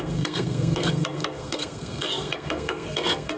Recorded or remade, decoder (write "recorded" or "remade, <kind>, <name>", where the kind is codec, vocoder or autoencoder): remade, codec, SNAC